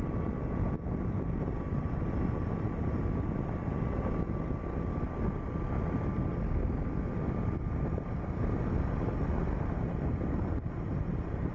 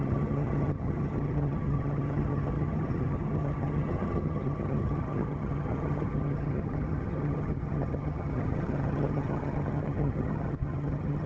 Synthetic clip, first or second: second